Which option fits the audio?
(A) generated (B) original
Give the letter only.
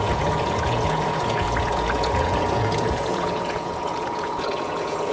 A